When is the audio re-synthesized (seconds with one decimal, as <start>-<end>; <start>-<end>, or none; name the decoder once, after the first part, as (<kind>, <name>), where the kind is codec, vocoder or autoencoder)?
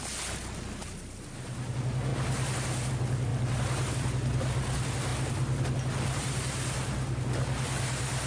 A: none